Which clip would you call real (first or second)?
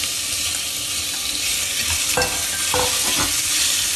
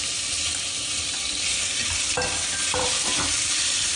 first